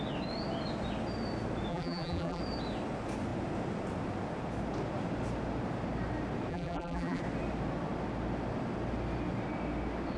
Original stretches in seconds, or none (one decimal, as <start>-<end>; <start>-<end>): 0.0-1.7; 2.4-6.5; 7.2-10.2